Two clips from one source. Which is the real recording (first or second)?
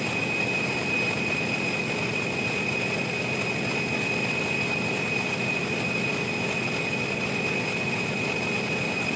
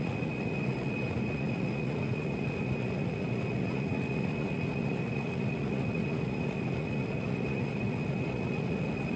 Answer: first